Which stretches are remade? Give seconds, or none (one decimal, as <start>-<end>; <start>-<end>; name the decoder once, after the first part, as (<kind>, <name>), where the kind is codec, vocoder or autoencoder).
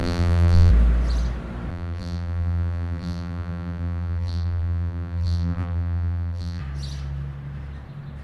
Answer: 0.0-0.7 (vocoder, BigVGAN v2); 1.7-6.6